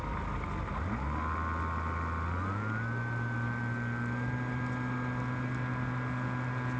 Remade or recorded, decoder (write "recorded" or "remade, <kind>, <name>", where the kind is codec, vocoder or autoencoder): recorded